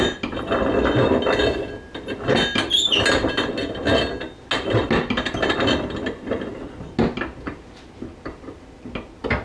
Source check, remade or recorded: recorded